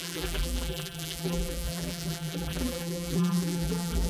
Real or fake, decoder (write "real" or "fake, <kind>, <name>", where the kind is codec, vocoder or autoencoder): fake, vocoder, BigVGAN v2